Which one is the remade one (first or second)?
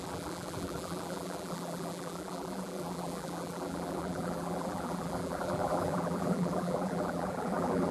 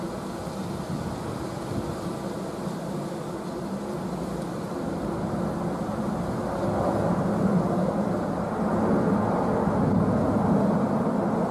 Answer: first